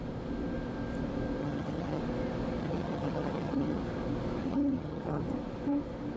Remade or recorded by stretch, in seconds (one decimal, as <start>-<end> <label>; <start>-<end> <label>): 0.0-1.4 recorded; 1.4-2.0 remade; 2.0-2.6 recorded; 2.6-3.8 remade; 3.8-4.4 recorded; 4.4-5.2 remade; 5.2-6.2 recorded